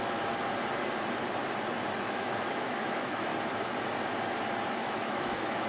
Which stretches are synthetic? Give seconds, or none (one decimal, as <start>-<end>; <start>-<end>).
2.0-3.3; 4.7-5.7